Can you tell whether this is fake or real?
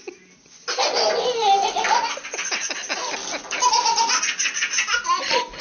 real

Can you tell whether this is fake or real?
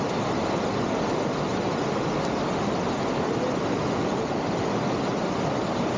real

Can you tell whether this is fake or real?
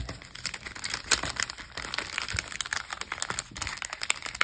real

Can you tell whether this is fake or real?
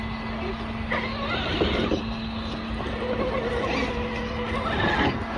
real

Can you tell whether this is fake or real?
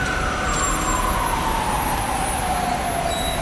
real